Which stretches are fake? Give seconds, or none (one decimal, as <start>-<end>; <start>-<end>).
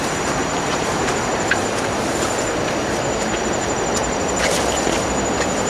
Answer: 0.4-1.2; 1.6-2.2; 4.0-4.6